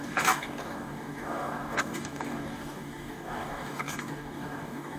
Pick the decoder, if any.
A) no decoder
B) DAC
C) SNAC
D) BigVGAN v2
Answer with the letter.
B